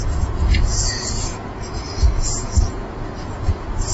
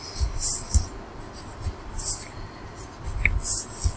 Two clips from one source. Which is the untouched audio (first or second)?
second